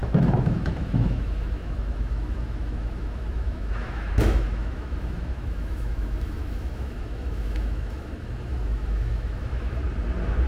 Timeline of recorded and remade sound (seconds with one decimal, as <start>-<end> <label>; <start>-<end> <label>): 0.0-9.8 remade; 9.8-10.5 recorded